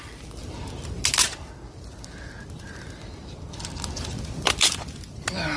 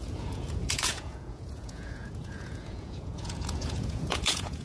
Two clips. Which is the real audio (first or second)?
first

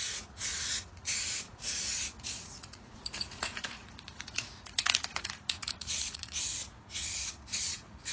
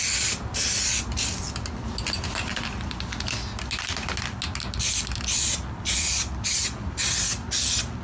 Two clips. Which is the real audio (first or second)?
second